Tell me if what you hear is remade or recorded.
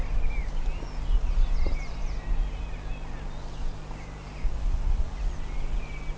recorded